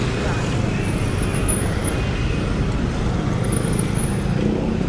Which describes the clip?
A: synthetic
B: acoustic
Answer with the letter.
B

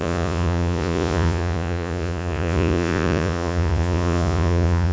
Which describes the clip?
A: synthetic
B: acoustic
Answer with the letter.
A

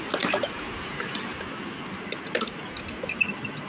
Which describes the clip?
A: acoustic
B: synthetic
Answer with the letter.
A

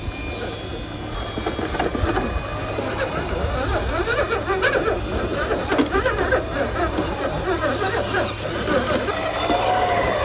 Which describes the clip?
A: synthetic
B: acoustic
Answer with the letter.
B